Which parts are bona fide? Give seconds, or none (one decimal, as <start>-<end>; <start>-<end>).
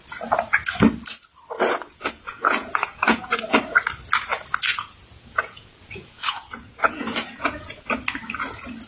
0.0-1.7; 3.4-4.7; 7.9-8.9